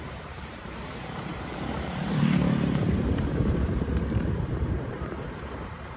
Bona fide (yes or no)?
no